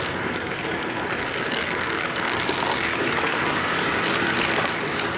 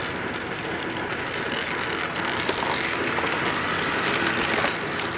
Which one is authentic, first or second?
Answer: second